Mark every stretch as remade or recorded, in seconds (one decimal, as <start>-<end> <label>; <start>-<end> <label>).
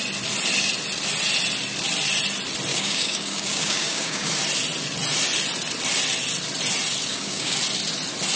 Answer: 0.0-2.7 recorded; 2.7-4.3 remade; 4.3-7.1 recorded; 7.1-7.6 remade; 7.6-8.4 recorded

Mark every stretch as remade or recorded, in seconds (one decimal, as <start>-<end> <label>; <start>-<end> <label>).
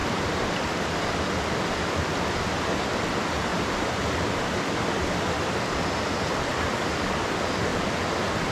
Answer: 0.0-0.6 remade; 0.6-3.5 recorded; 3.5-4.0 remade; 4.0-8.5 recorded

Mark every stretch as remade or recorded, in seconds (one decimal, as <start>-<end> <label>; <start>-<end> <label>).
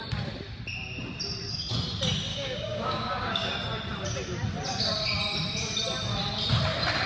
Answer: 0.0-2.3 recorded; 2.3-3.5 remade; 3.5-7.1 recorded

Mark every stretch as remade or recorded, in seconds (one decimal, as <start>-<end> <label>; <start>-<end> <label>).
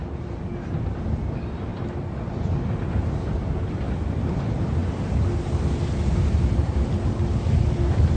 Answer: 0.0-1.7 remade; 1.7-3.4 recorded; 3.4-4.8 remade; 4.8-7.5 recorded; 7.5-8.2 remade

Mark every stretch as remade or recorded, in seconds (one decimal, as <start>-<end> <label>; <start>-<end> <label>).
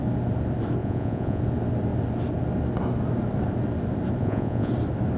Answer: 0.0-0.8 recorded; 0.8-1.4 remade; 1.4-4.2 recorded; 4.2-4.7 remade; 4.7-5.2 recorded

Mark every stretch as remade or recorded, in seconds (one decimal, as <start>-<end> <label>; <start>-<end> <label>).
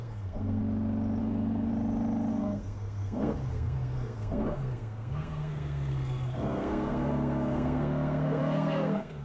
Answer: 0.0-0.6 remade; 0.6-1.2 recorded; 1.2-1.7 remade; 1.7-2.3 recorded; 2.3-9.2 remade